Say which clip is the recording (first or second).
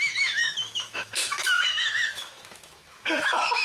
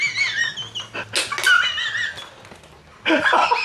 second